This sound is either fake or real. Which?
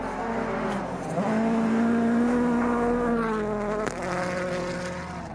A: real